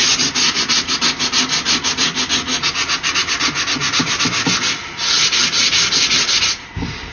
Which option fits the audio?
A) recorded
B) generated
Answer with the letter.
A